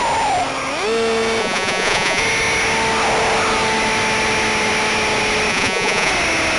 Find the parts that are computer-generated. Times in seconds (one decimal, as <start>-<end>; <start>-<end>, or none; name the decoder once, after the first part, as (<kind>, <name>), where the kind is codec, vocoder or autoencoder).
1.4-2.2 (vocoder, Vocos); 5.5-6.1

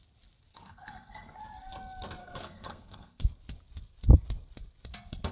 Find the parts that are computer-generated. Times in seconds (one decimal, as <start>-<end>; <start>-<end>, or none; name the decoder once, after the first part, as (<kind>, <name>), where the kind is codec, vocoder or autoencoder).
0.5-1.4 (codec, SNAC); 2.2-3.2

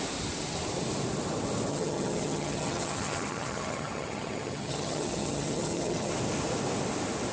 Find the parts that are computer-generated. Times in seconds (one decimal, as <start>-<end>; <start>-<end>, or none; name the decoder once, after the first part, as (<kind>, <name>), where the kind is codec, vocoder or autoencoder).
1.7-6.1 (vocoder, HiFi-GAN)

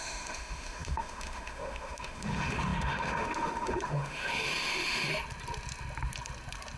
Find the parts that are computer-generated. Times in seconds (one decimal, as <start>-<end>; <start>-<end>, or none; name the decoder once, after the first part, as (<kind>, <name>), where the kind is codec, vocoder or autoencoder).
0.0-5.1 (autoencoder, DAC-VAE)